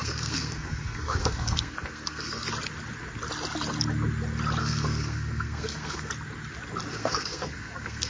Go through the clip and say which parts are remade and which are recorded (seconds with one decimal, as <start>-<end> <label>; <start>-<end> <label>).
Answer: 0.0-2.5 remade; 2.5-4.6 recorded; 4.6-6.1 remade; 6.1-6.9 recorded; 6.9-8.1 remade